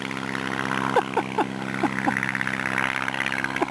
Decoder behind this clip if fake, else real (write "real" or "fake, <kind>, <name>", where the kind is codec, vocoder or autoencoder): real